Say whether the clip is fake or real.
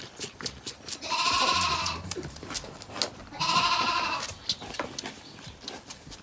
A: real